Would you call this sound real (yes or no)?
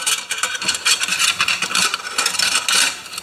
yes